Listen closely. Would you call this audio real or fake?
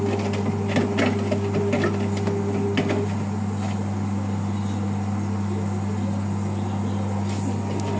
real